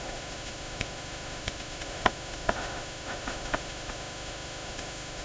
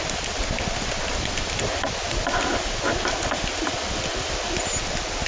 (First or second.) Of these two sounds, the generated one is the first